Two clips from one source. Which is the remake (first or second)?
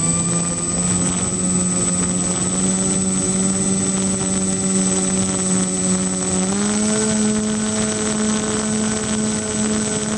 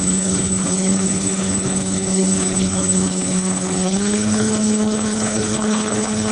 second